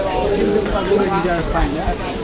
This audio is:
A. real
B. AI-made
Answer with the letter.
B